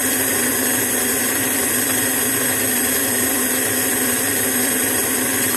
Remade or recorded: recorded